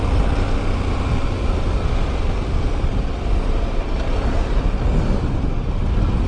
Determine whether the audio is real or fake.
real